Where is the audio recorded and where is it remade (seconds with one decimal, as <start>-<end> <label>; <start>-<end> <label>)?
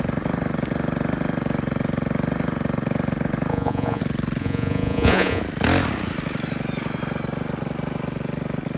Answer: 0.0-3.5 recorded; 3.5-4.0 remade; 4.0-4.4 recorded; 4.4-5.4 remade; 5.4-8.8 recorded